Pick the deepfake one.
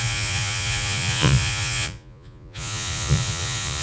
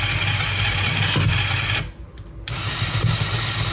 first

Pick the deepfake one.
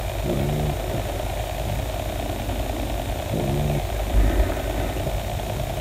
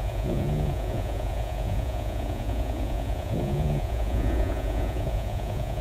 second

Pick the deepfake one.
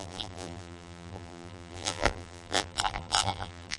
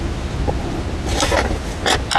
first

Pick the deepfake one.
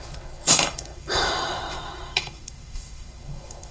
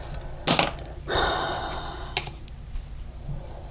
first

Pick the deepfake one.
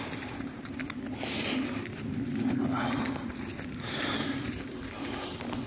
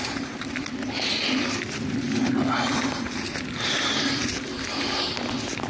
first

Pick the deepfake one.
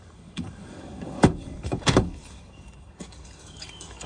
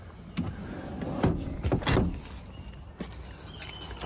first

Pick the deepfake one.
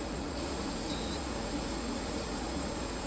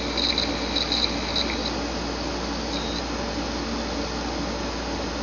first